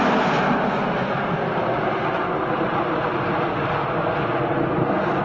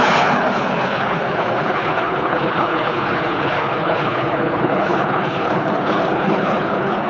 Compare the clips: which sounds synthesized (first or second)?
second